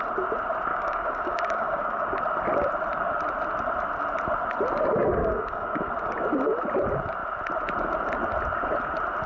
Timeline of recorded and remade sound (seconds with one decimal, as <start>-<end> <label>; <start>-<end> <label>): 0.0-0.7 recorded; 0.7-2.2 remade; 2.2-5.1 recorded; 5.1-5.9 remade; 5.9-9.3 recorded

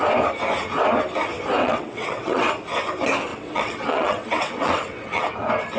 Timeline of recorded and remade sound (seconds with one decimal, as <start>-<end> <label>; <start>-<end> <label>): 0.0-1.6 recorded; 1.6-2.5 remade; 2.5-3.3 recorded; 3.3-5.2 remade; 5.2-5.8 recorded

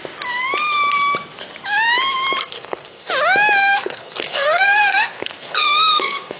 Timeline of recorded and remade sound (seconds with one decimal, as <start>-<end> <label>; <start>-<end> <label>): 0.0-2.4 recorded; 2.4-3.1 remade; 3.1-3.7 recorded; 3.7-6.4 remade

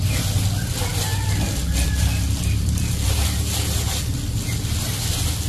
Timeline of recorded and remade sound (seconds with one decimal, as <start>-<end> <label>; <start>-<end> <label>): 0.0-1.1 recorded; 1.1-4.4 remade; 4.4-5.5 recorded